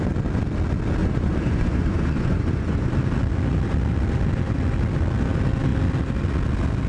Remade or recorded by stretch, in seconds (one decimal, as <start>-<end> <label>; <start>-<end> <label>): 0.0-1.0 recorded; 1.0-2.9 remade; 2.9-6.9 recorded